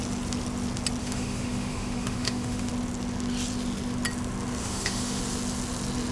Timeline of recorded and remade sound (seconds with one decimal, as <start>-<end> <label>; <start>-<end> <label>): 0.0-1.0 recorded; 1.0-2.7 remade; 2.7-4.6 recorded; 4.6-5.2 remade; 5.2-6.1 recorded